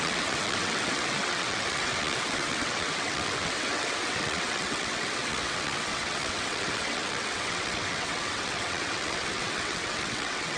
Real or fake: fake